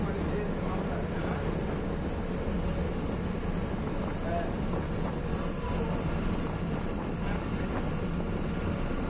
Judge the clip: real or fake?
real